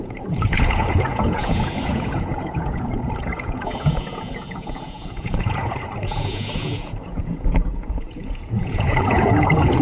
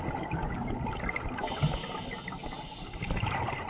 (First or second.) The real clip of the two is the second